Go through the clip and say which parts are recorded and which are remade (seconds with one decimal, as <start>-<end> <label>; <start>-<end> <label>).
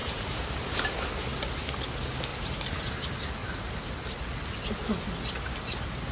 0.0-0.8 remade; 0.8-2.3 recorded; 2.3-2.8 remade; 2.8-3.4 recorded; 3.4-4.0 remade; 4.0-6.1 recorded